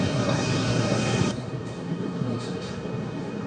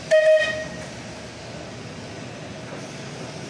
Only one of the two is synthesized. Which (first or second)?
first